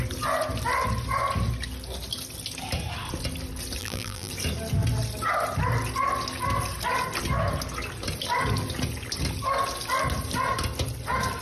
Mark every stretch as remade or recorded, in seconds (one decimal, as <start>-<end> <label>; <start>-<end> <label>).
0.0-3.8 recorded; 3.8-4.3 remade; 4.3-11.4 recorded